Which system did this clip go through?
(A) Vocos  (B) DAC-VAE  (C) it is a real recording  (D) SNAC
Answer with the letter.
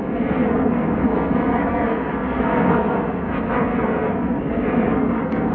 D